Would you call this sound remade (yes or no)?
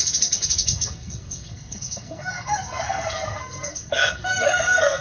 yes